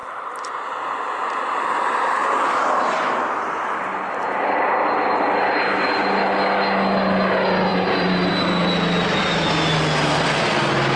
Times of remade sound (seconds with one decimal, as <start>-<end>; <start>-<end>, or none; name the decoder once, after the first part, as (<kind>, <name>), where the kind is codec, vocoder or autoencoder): 0.0-0.7 (vocoder, BigVGAN v2); 7.7-9.5